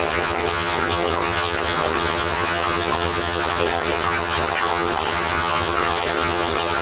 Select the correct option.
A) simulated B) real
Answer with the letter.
A